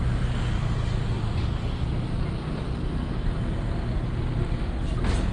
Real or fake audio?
real